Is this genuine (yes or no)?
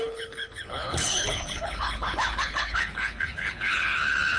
no